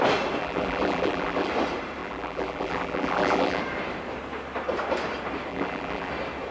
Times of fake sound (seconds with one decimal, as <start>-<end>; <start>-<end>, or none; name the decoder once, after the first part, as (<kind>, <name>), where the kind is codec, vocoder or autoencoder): 0.4-1.5 (vocoder, BigVGAN v2); 2.0-3.6; 5.5-6.1